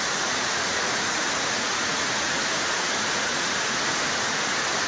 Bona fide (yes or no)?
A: no